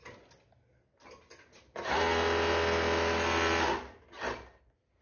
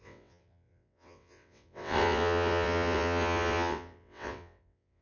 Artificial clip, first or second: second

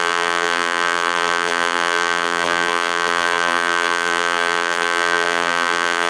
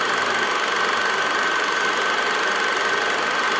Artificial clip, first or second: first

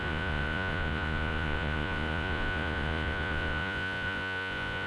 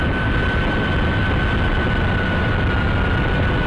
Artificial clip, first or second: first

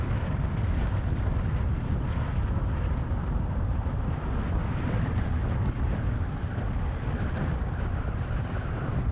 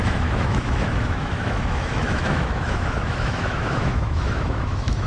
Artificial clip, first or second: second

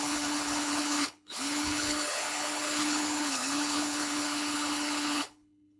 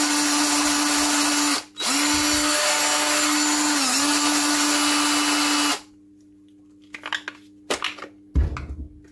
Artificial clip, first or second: first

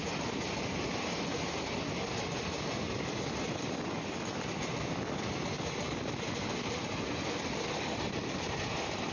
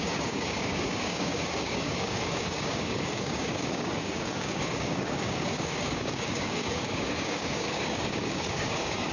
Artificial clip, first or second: second